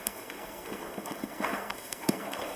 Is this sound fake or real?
fake